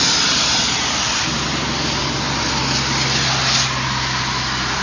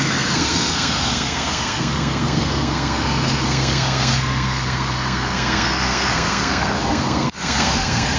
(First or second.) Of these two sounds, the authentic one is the first